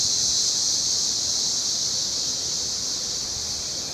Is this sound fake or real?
real